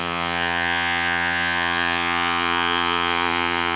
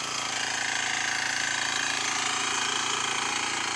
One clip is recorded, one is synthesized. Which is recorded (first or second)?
second